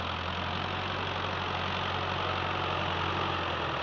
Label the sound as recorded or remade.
recorded